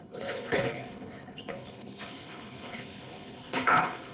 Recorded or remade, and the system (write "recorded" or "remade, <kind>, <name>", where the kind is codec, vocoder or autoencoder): remade, codec, HILCodec